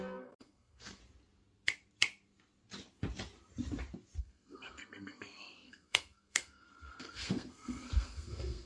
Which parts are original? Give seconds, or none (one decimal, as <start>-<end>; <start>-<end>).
1.0-4.2